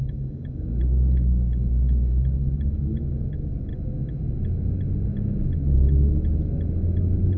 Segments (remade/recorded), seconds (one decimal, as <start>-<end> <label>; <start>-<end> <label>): 0.0-3.7 remade; 3.7-7.4 recorded